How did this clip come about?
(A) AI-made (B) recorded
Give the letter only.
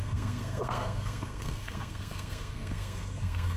A